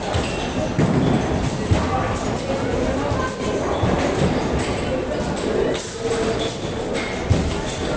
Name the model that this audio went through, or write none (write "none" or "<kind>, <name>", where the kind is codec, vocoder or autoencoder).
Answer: none